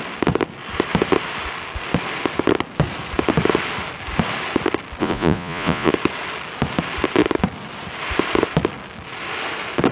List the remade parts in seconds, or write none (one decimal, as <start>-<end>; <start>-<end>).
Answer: 5.0-5.9